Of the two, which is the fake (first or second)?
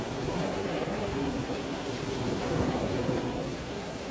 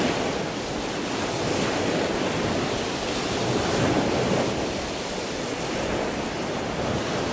first